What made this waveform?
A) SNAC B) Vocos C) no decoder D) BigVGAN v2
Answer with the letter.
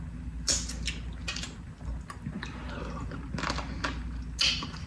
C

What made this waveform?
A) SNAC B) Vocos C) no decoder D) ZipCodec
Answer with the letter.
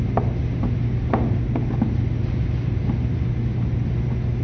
C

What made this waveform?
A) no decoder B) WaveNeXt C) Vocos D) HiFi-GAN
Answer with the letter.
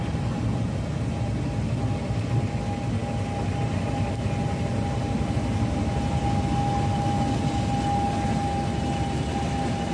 A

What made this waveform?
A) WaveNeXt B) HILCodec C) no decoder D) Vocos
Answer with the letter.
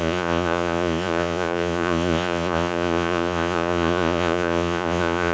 D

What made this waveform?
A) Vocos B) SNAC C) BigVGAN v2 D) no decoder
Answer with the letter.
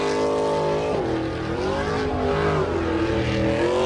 D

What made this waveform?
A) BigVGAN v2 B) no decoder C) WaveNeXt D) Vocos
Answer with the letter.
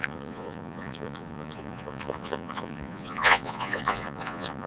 D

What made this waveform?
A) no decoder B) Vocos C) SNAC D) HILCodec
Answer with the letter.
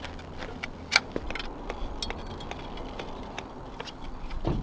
A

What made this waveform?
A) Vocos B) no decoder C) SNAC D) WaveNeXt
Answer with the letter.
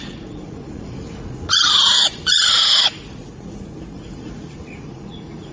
A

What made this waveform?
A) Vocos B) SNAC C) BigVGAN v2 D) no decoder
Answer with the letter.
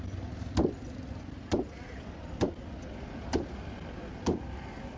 D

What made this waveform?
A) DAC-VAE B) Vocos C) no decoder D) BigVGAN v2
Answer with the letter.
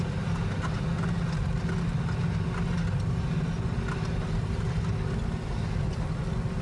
C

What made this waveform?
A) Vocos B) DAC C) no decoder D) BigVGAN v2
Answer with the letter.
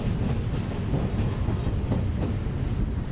C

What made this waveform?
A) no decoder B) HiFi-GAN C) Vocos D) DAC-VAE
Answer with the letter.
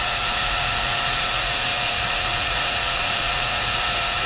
C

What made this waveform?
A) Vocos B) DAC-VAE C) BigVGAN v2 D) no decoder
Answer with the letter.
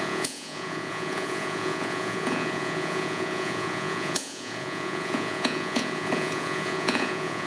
A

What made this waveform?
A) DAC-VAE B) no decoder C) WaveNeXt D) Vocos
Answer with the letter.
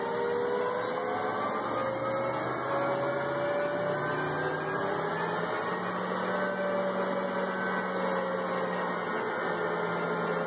B